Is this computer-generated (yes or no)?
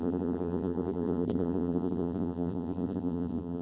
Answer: yes